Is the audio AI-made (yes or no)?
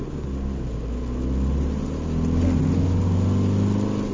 no